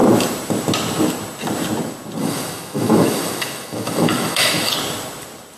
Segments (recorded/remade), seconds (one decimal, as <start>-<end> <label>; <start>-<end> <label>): 0.0-2.2 recorded; 2.2-4.7 remade; 4.7-5.6 recorded